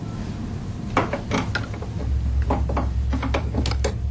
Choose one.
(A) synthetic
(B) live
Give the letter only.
B